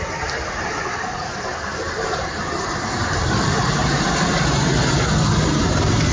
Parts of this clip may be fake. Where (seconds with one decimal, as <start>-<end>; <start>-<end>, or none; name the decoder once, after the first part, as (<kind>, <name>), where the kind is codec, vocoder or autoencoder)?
0.0-6.1 (vocoder, BigVGAN v2)

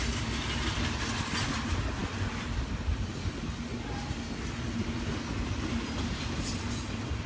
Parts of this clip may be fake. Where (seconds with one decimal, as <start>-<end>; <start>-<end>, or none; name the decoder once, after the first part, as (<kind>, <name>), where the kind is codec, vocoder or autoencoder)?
none

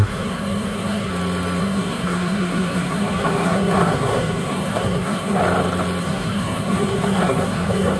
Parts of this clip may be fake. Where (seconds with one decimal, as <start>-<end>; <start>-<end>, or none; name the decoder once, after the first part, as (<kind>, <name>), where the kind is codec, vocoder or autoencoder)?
0.0-1.1 (codec, SNAC); 1.6-5.4; 6.0-8.0